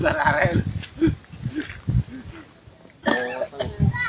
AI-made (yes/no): no